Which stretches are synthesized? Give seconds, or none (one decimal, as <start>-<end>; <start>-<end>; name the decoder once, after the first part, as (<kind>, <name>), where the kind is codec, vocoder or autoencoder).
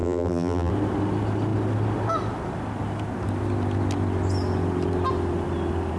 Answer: 0.0-0.7 (vocoder, BigVGAN v2)